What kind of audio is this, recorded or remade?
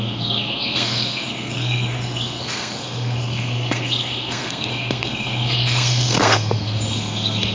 remade